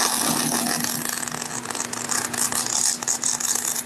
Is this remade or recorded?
recorded